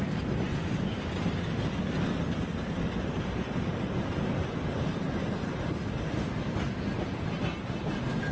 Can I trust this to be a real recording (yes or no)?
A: yes